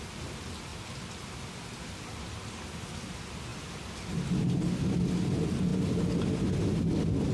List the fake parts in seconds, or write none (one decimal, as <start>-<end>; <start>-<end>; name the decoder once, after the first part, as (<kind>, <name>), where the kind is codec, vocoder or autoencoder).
none

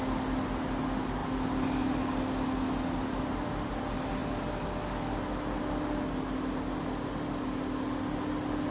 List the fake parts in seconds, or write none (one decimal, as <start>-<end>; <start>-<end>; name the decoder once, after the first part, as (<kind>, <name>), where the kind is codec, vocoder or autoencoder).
none

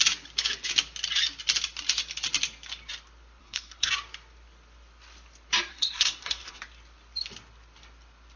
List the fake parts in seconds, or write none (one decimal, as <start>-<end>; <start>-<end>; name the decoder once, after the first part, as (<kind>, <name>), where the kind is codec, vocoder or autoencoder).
3.4-3.9 (codec, SNAC); 5.7-6.6

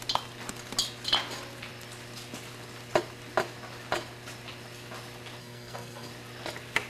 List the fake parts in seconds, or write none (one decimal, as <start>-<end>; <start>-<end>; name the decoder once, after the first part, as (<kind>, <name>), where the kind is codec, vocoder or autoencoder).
5.4-6.1 (codec, SNAC)